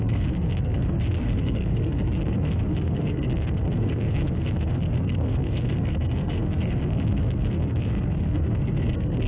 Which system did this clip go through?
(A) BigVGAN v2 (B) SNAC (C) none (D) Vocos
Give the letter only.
B